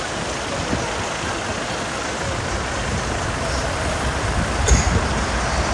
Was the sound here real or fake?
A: real